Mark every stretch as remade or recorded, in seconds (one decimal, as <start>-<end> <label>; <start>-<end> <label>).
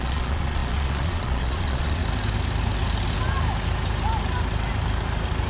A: 0.0-2.0 remade; 2.0-5.5 recorded